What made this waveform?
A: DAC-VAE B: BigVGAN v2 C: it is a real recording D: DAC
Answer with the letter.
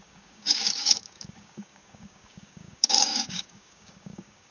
D